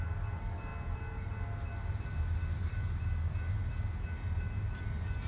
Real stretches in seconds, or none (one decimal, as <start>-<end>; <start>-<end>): 0.0-5.3